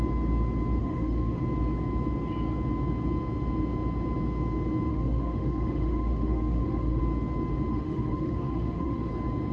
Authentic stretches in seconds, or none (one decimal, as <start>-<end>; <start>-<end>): 0.0-0.8; 1.4-4.9; 7.0-7.7; 9.1-9.5